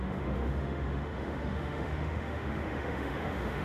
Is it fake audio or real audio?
fake